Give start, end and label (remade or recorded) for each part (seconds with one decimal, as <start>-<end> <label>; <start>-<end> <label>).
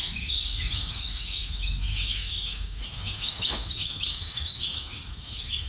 0.0-5.7 remade